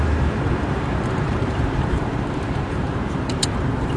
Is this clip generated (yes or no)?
yes